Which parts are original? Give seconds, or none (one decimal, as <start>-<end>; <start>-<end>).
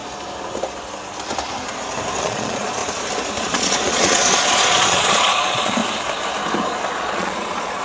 0.0-2.2; 2.8-3.4; 5.8-6.9